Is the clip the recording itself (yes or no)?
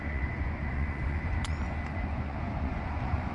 no